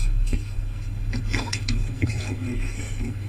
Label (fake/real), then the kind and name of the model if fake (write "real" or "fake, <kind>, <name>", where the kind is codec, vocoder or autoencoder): fake, codec, SNAC